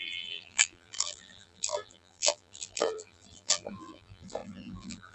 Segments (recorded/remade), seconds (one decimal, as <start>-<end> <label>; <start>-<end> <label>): 0.0-5.1 remade